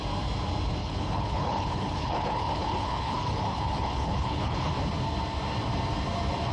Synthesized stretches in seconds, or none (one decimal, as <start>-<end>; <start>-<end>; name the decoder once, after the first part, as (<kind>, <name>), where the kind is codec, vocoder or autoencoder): 0.8-4.7 (codec, HILCodec)